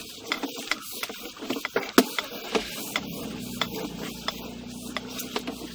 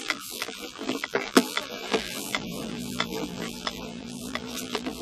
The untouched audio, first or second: first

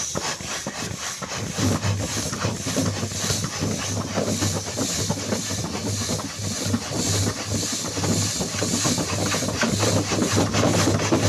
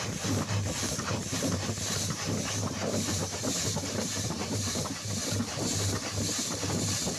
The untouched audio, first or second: first